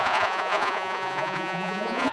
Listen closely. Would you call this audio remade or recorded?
remade